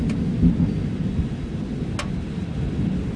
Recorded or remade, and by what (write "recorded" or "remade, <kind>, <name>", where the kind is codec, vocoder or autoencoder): recorded